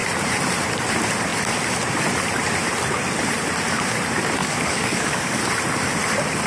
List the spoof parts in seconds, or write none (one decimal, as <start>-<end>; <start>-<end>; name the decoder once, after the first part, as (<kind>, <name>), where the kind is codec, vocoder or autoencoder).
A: 4.4-5.4 (codec, DAC)